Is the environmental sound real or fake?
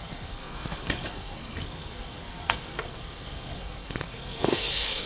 fake